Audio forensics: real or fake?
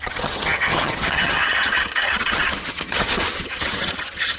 fake